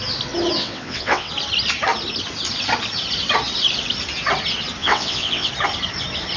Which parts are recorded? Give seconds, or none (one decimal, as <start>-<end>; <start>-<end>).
0.0-0.6; 1.3-4.8; 5.5-6.4